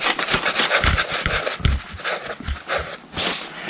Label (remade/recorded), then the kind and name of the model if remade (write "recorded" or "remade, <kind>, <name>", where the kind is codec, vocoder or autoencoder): recorded